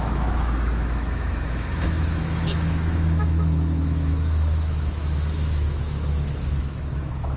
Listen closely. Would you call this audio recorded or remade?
remade